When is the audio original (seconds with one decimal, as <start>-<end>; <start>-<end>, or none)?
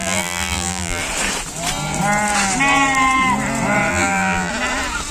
1.0-3.9; 4.5-5.1